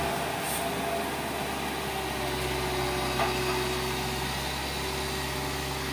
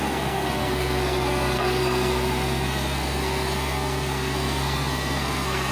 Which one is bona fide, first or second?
first